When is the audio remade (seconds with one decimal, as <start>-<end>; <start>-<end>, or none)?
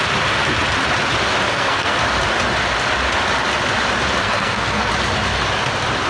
1.5-2.0; 4.2-4.9